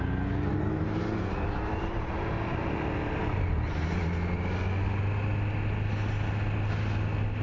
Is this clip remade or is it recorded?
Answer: recorded